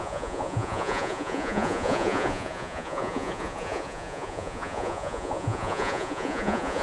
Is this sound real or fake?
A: fake